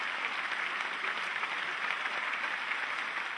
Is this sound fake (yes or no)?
no